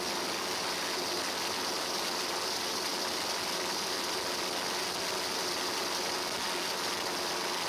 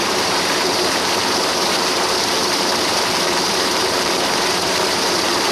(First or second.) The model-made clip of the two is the second